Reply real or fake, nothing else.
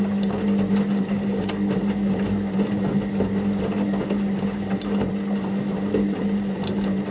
real